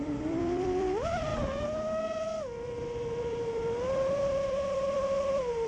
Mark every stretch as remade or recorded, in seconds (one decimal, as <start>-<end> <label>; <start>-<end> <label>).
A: 0.0-1.3 remade; 1.3-2.0 recorded; 2.0-5.7 remade

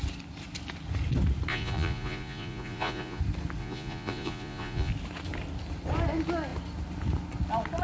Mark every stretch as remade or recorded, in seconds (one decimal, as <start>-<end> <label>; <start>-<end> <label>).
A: 0.0-1.5 recorded; 1.5-3.2 remade; 3.2-3.6 recorded; 3.6-4.9 remade; 4.9-7.8 recorded

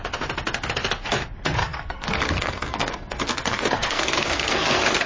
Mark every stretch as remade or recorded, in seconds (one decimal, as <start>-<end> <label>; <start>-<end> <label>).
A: 0.0-1.6 recorded; 1.6-5.1 remade

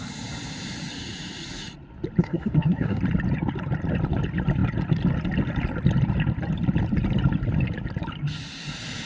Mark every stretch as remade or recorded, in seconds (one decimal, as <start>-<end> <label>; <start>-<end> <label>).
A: 0.0-2.2 recorded; 2.2-3.0 remade; 3.0-9.1 recorded

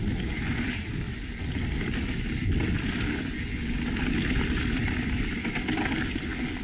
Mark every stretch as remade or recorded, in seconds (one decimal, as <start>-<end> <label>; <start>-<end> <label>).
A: 0.0-4.8 recorded; 4.8-6.0 remade; 6.0-6.6 recorded

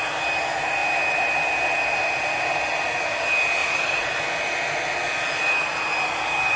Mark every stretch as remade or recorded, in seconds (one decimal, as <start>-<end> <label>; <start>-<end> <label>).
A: 0.0-3.6 recorded; 3.6-4.1 remade; 4.1-6.6 recorded